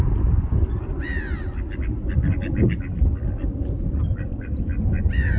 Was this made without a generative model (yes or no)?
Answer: yes